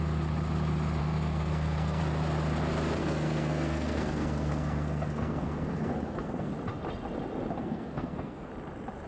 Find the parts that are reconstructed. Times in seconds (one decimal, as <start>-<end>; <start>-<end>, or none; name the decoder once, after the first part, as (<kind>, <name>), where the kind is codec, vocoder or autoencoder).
1.0-2.0 (codec, SNAC); 3.0-6.5; 7.6-8.5